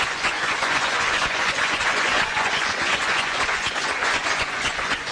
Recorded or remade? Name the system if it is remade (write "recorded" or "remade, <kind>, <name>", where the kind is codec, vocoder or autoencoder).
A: remade, vocoder, Vocos